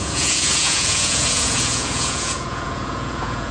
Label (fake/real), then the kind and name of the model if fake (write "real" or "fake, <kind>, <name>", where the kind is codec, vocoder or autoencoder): fake, vocoder, Vocos